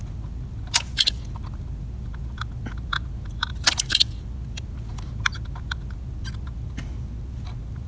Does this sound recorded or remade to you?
recorded